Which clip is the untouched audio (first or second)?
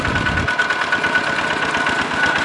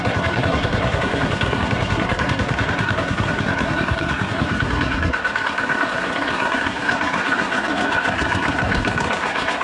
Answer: first